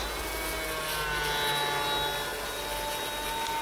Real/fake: real